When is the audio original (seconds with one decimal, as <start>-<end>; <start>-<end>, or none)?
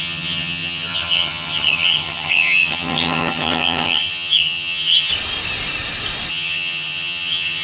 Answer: 5.1-6.3